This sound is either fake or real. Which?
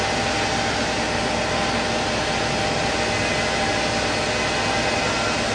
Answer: real